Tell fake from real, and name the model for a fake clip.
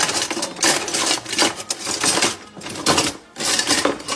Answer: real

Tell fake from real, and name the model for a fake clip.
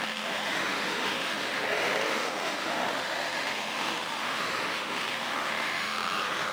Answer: fake, autoencoder, DAC-VAE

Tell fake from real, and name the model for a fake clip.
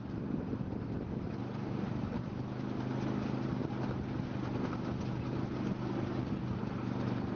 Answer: real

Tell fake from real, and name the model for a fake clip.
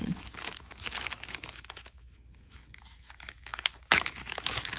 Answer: fake, autoencoder, DAC-VAE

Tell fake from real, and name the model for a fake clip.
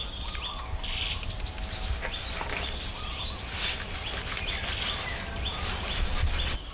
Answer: real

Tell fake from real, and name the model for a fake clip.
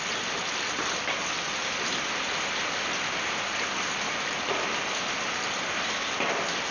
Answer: real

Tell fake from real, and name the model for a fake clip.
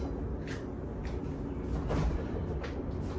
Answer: real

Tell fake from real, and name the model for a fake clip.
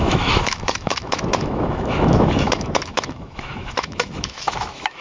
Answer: fake, autoencoder, DAC-VAE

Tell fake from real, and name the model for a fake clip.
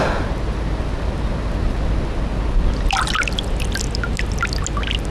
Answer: real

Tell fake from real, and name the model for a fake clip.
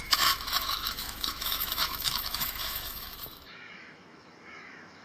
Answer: fake, autoencoder, DAC-VAE